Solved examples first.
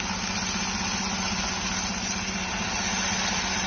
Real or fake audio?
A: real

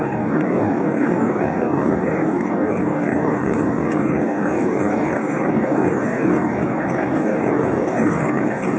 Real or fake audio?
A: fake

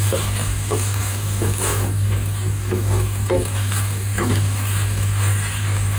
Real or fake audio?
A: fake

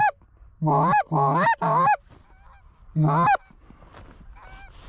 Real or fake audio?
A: real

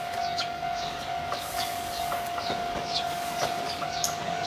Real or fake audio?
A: fake